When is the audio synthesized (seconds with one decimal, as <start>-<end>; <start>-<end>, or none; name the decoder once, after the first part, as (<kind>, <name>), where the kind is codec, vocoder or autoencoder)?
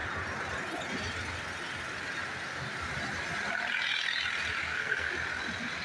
4.6-5.1 (codec, SNAC)